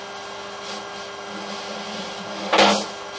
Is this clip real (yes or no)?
yes